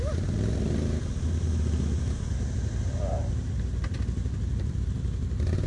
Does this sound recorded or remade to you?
recorded